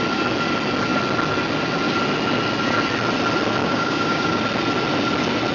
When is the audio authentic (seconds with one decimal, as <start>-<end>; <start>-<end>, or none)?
0.0-3.6; 4.4-5.5